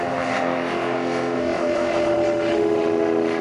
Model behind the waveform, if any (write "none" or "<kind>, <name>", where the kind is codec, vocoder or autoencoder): autoencoder, DAC-VAE